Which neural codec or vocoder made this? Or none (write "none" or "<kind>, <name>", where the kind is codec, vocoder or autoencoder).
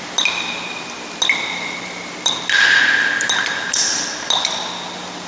none